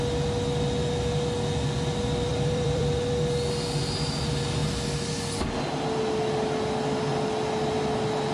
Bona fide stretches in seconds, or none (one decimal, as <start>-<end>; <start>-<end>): 0.0-2.3; 3.1-8.3